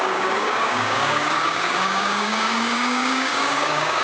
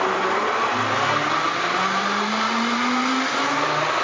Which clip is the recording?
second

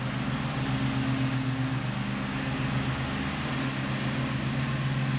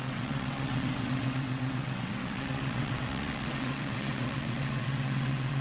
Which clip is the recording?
first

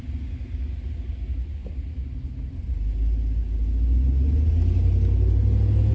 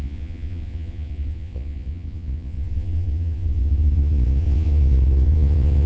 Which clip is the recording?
first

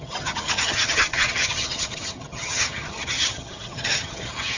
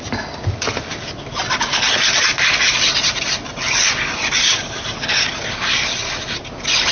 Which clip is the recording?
second